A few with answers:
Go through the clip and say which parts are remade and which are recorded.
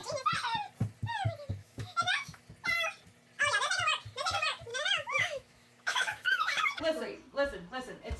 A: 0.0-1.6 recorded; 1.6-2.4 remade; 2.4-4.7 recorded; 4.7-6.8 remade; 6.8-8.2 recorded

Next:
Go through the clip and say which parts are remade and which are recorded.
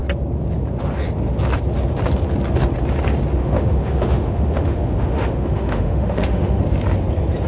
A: 0.0-3.4 recorded; 3.4-6.6 remade; 6.6-7.5 recorded